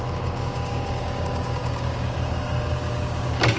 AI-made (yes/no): yes